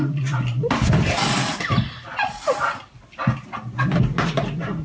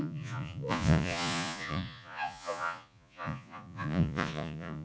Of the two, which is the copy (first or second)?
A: second